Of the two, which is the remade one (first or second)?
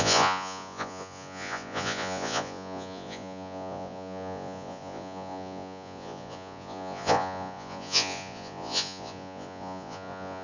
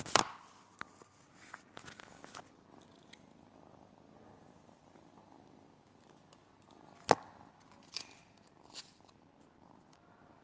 first